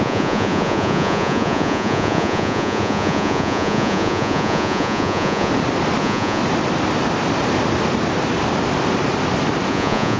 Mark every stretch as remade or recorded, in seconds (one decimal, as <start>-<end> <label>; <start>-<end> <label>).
0.0-5.5 remade; 5.5-6.0 recorded; 6.0-6.4 remade; 6.4-9.7 recorded; 9.7-10.2 remade